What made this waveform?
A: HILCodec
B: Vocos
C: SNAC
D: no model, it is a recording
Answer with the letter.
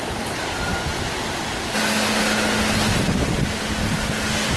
D